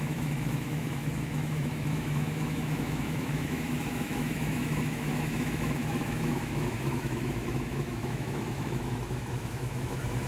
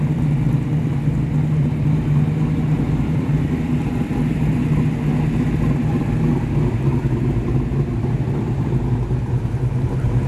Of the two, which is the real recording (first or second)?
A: second